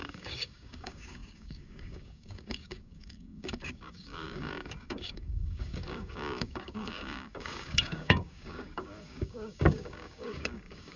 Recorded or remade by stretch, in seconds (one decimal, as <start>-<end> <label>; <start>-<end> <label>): 0.0-11.0 remade